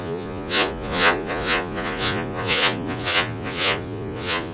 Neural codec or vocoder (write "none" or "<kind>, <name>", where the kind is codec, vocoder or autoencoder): vocoder, Vocos